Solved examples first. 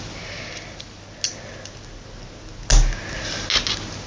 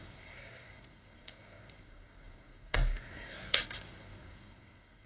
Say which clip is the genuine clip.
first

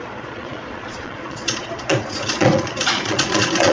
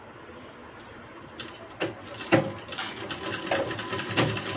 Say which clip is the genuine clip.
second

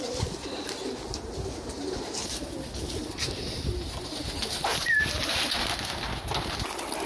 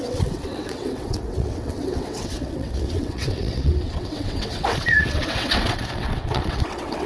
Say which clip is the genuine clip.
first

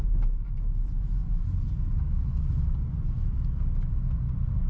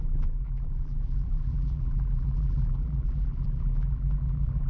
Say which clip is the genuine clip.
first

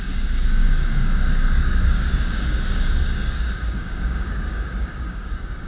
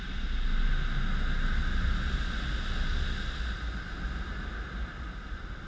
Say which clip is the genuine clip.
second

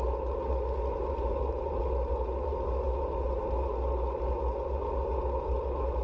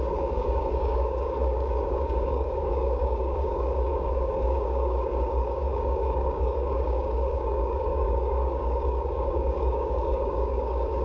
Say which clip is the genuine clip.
first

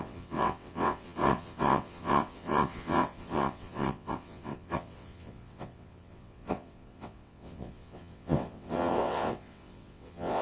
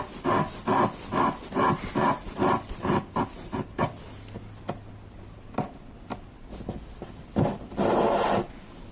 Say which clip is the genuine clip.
second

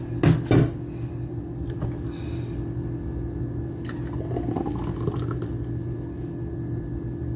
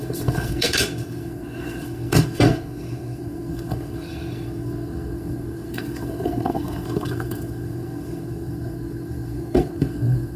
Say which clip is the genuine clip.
first